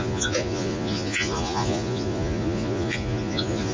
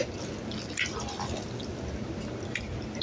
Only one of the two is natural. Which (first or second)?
second